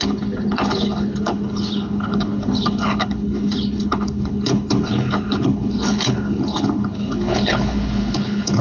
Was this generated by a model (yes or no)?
yes